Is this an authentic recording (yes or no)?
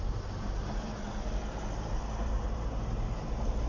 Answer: yes